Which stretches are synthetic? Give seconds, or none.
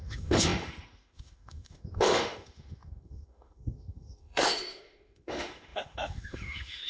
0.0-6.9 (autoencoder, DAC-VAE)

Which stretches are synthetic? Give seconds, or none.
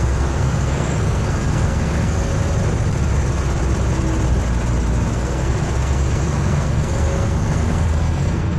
0.0-2.3 (codec, SNAC); 5.1-8.6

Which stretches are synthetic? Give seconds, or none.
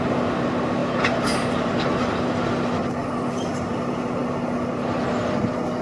0.8-2.0 (vocoder, BigVGAN v2); 3.0-3.7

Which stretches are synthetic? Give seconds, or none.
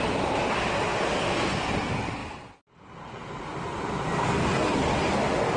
none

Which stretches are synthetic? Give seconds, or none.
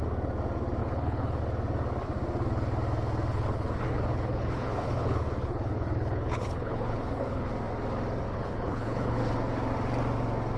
0.8-1.4 (codec, HILCodec); 3.3-7.5; 8.3-9.3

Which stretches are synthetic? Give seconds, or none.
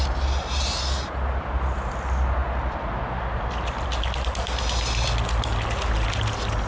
none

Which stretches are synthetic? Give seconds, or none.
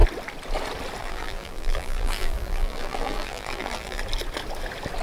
1.0-4.0 (vocoder, BigVGAN v2)